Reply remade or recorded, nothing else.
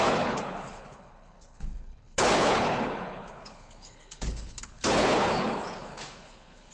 remade